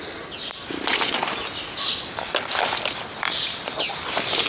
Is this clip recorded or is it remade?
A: recorded